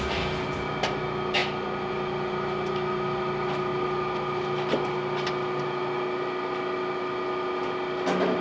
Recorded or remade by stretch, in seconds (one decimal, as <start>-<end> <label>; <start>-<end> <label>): 0.0-8.4 recorded